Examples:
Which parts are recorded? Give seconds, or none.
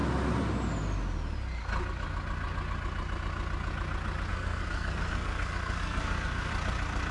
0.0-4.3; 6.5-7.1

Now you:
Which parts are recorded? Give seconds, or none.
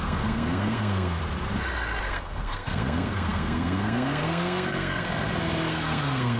1.2-2.0; 5.1-5.7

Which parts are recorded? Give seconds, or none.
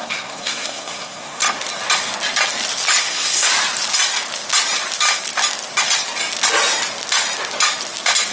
1.4-3.0; 3.5-8.3